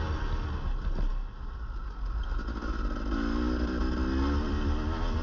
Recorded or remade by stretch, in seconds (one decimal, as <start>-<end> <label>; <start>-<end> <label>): 0.0-5.2 recorded